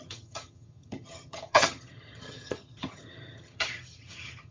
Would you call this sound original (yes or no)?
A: no